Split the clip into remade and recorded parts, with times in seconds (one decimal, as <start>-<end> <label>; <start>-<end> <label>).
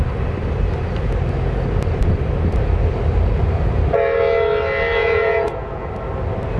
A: 0.0-5.0 recorded; 5.0-5.9 remade; 5.9-6.6 recorded